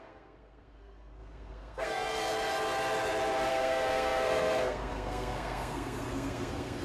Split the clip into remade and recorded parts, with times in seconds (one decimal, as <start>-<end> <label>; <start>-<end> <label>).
0.0-2.2 remade; 2.2-3.5 recorded; 3.5-6.8 remade